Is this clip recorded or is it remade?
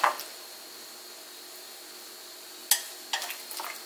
recorded